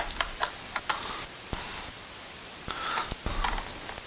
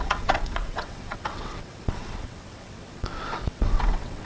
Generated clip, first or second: second